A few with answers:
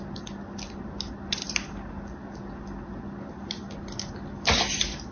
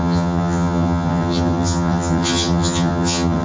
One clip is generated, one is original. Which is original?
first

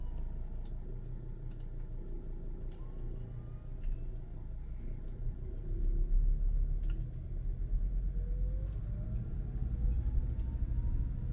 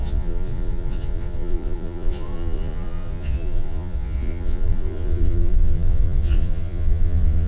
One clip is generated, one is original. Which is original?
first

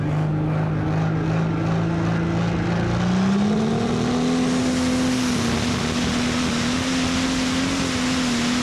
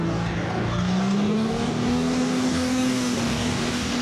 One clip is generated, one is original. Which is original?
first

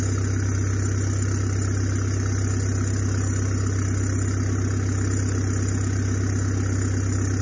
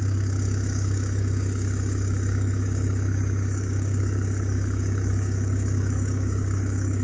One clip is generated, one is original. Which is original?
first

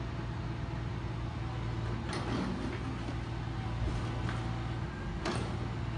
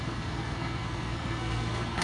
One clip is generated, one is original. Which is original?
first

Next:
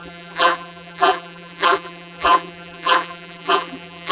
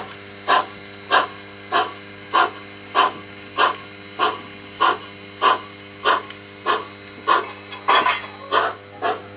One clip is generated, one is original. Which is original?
second